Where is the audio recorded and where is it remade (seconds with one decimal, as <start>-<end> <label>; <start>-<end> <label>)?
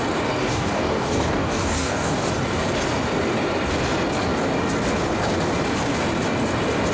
0.0-0.4 recorded; 0.4-2.3 remade; 2.3-6.9 recorded